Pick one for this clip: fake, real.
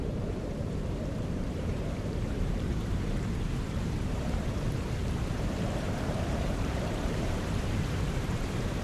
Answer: fake